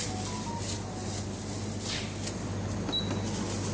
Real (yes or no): yes